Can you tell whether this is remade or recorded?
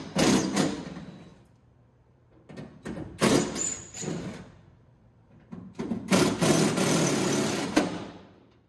remade